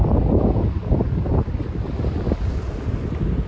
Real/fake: real